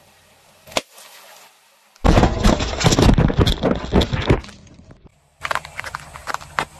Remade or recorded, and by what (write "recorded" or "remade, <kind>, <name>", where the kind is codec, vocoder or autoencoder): recorded